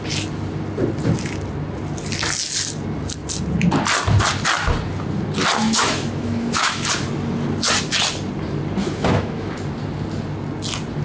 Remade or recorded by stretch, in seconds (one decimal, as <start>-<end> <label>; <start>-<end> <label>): 0.0-5.6 recorded; 5.6-6.9 remade; 6.9-8.8 recorded; 8.8-9.5 remade; 9.5-11.0 recorded